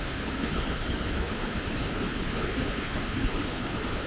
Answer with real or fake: fake